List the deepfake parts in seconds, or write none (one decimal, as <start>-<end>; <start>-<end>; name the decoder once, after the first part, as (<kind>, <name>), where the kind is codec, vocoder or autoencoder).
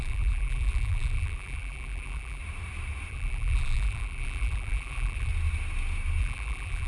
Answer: 0.0-2.4 (vocoder, BigVGAN v2); 3.1-5.3; 6.2-6.9